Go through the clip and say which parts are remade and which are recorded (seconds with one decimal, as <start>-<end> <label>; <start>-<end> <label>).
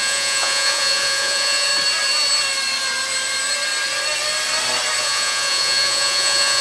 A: 0.0-1.7 remade; 1.7-5.0 recorded; 5.0-6.6 remade